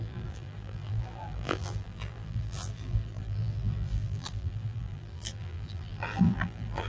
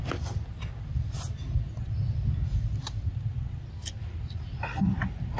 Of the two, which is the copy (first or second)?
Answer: first